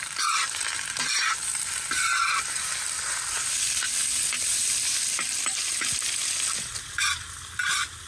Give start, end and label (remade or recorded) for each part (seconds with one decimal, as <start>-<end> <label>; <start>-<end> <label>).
0.0-8.1 recorded